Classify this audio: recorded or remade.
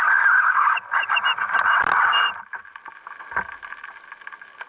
recorded